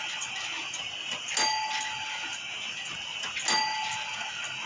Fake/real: real